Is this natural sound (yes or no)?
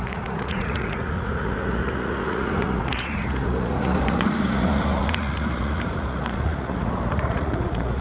no